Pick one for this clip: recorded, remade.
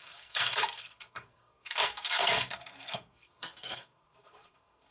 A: remade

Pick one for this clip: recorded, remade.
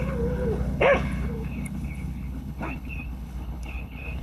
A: remade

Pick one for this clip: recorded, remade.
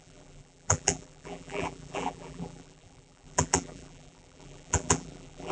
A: remade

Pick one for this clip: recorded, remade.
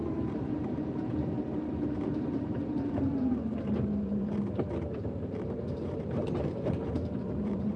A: remade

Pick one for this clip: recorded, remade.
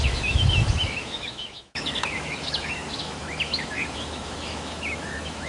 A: remade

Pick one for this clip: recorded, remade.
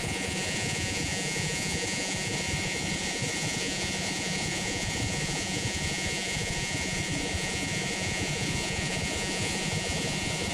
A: remade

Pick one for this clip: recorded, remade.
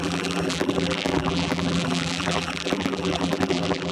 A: remade